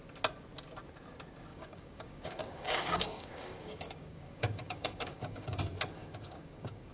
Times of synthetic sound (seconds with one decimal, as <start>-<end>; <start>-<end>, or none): 1.5-5.6; 6.0-6.9

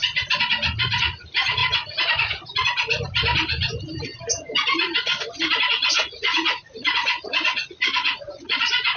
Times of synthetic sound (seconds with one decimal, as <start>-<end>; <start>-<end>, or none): 1.0-1.6; 5.7-9.0

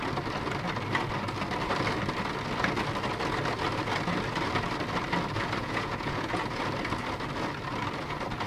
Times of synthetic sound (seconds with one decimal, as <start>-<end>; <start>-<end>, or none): 5.6-6.6

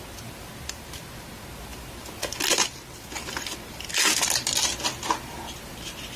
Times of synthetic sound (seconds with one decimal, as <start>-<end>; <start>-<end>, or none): none

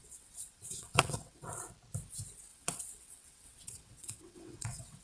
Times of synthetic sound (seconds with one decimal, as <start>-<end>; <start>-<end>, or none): 0.0-1.5; 2.5-5.0

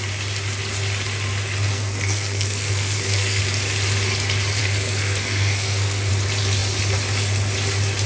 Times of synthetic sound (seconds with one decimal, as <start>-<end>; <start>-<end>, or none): 1.7-3.4; 4.6-6.1

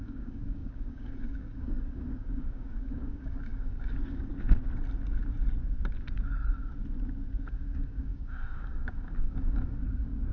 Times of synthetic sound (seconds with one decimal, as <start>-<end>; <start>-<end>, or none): 0.0-4.3; 7.5-10.3

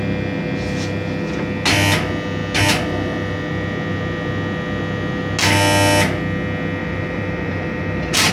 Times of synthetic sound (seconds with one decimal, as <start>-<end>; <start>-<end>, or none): 6.8-8.3